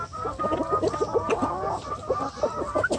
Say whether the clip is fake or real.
real